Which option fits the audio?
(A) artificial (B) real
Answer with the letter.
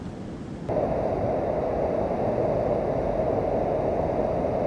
B